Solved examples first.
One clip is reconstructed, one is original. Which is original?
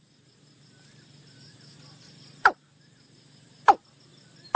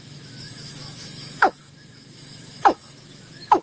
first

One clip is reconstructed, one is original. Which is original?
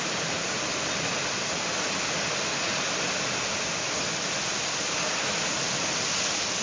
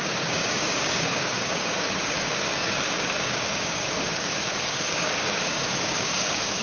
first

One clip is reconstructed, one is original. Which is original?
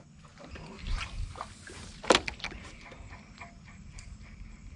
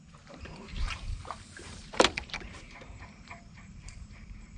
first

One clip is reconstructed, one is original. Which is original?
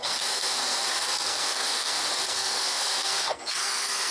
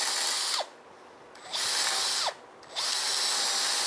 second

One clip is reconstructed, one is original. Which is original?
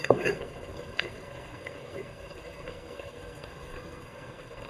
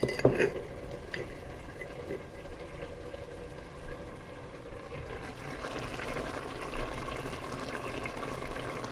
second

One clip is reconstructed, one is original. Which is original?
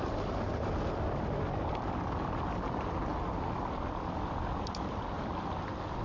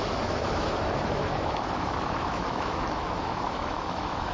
first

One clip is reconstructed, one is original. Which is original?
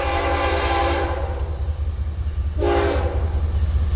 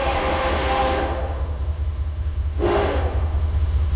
first